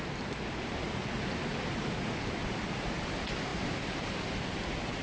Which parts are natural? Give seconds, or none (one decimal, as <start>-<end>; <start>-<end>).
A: 0.0-5.0